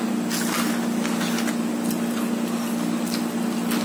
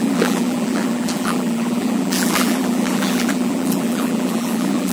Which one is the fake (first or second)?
second